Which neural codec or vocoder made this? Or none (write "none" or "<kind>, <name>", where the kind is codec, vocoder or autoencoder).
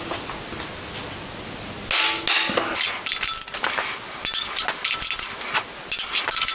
none